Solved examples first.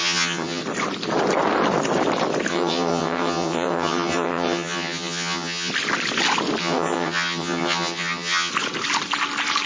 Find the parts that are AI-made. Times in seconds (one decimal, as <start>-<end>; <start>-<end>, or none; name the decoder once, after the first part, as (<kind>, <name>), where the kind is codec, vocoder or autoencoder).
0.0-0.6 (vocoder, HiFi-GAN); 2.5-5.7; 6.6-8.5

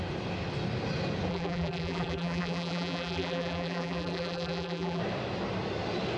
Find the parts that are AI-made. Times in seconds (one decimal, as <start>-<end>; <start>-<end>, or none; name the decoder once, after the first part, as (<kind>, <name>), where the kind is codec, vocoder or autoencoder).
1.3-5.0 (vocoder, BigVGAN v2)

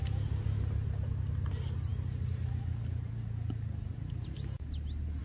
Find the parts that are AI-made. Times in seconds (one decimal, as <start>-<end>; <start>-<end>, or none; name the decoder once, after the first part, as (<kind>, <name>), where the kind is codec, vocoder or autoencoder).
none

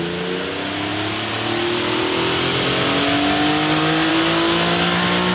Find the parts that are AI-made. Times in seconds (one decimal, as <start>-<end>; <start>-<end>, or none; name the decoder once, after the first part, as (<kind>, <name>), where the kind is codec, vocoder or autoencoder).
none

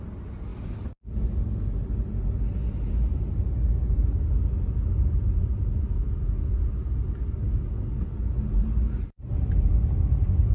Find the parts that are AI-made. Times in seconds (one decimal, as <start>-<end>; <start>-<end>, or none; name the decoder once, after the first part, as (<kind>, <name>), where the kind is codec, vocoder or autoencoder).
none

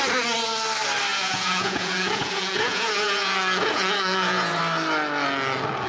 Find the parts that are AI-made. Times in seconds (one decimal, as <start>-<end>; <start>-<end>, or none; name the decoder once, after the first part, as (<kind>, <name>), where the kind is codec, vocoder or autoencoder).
1.1-4.6 (vocoder, Vocos)